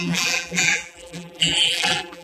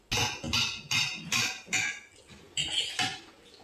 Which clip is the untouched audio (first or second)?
second